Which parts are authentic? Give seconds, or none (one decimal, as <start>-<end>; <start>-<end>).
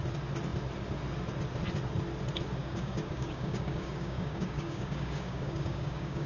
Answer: 0.0-2.6